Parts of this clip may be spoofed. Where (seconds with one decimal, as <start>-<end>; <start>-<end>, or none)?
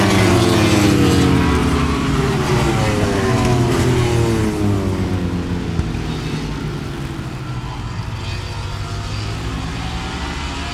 1.6-2.7